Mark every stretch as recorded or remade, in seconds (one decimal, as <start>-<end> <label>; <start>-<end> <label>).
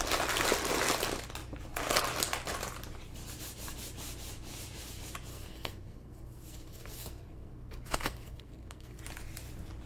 0.0-5.3 recorded; 5.3-9.0 remade; 9.0-9.9 recorded